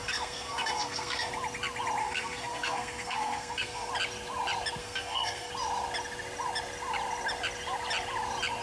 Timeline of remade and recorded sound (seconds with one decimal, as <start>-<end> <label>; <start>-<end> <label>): 0.0-1.3 remade; 1.3-2.0 recorded; 2.0-3.9 remade; 3.9-4.8 recorded; 4.8-5.5 remade; 5.5-8.6 recorded